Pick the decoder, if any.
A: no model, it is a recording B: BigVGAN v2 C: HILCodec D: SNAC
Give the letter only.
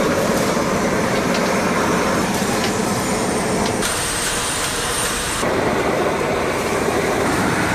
B